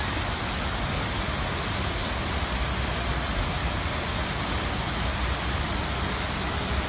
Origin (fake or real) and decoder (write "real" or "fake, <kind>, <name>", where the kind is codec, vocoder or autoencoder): real